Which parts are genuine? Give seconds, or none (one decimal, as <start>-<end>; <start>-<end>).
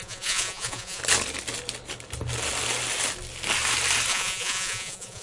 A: 1.0-4.1